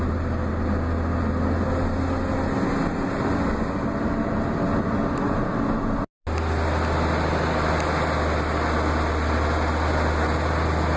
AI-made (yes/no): no